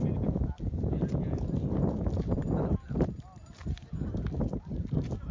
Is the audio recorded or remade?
recorded